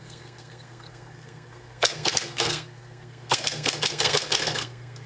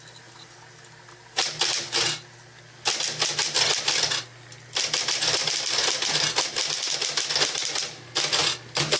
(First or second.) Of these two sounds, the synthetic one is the first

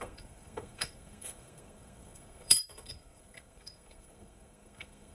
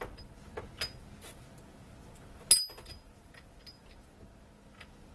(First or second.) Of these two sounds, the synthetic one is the first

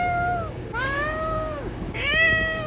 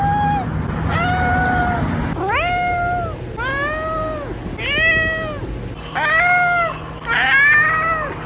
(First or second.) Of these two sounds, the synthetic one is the first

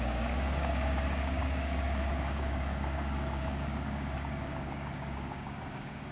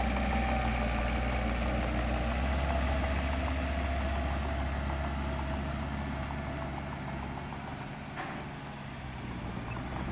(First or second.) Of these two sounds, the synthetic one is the first